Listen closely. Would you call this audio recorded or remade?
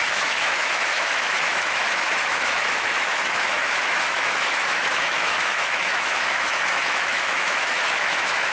remade